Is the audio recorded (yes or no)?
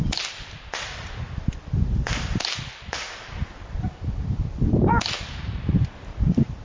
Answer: no